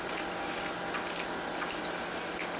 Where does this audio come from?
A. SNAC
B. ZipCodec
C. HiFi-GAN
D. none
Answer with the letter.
D